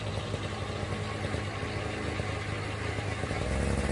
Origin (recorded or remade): recorded